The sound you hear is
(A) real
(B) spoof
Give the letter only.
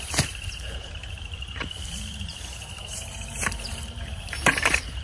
B